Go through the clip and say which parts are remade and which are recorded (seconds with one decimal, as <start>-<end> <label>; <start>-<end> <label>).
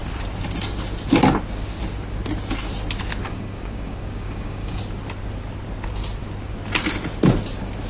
0.0-3.2 recorded; 3.2-4.8 remade; 4.8-7.9 recorded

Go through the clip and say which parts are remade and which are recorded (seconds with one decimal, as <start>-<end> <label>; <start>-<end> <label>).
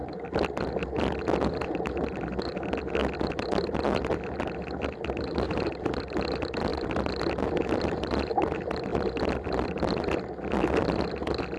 0.0-2.1 recorded; 2.1-3.0 remade; 3.0-3.8 recorded; 3.8-11.6 remade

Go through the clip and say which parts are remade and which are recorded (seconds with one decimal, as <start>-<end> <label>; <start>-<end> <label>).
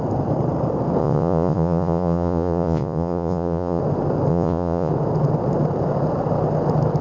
0.0-1.0 recorded; 1.0-3.8 remade; 3.8-4.3 recorded; 4.3-4.9 remade; 4.9-7.0 recorded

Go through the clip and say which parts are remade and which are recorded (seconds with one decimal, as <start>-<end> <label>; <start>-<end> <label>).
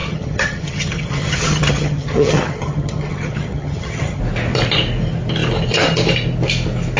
0.0-4.2 remade; 4.2-7.0 recorded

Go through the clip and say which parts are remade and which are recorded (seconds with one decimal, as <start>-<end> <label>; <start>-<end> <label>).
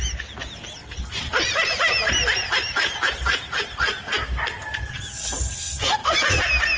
0.0-0.8 recorded; 0.8-4.9 remade; 4.9-6.0 recorded; 6.0-6.8 remade